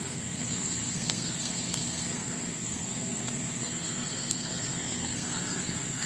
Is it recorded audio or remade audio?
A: remade